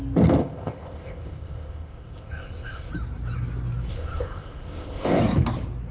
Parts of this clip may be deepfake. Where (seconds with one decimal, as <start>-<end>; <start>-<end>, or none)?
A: 0.4-2.9; 3.9-5.2